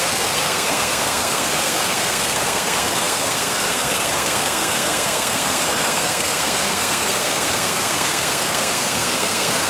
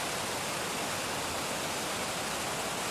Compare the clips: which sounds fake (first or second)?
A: first